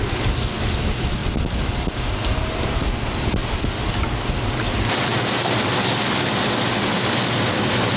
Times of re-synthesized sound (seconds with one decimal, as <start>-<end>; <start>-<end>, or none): 0.0-1.2; 2.8-3.4; 7.4-8.0